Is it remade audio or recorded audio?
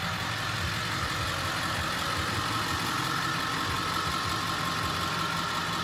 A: recorded